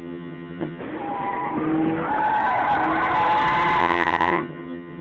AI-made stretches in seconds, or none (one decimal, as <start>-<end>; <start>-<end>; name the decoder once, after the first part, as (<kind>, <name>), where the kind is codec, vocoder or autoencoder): 0.0-0.8 (vocoder, HiFi-GAN); 3.8-5.0